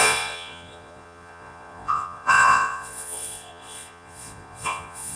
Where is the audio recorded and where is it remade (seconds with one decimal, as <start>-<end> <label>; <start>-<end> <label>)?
0.0-5.2 remade